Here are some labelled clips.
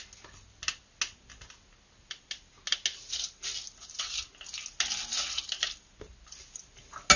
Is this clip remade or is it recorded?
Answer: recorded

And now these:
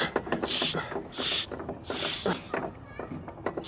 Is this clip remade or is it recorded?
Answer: recorded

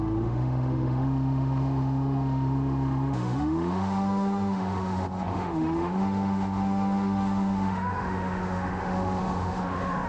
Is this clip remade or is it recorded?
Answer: remade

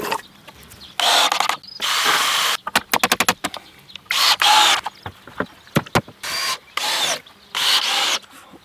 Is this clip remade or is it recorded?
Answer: recorded